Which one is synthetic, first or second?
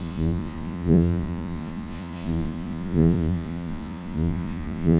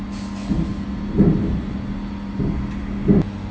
first